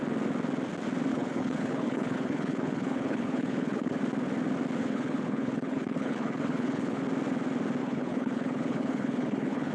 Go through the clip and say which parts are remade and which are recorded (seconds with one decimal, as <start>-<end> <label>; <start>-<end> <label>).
0.0-1.1 recorded; 1.1-4.0 remade; 4.0-4.8 recorded; 4.8-7.0 remade; 7.0-7.8 recorded; 7.8-9.7 remade